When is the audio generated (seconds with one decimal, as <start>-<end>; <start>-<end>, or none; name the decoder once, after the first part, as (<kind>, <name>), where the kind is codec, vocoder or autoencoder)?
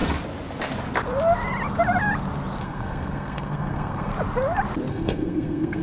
2.6-4.1 (codec, SNAC); 4.9-5.8